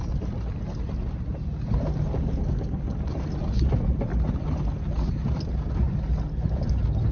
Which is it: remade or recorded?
recorded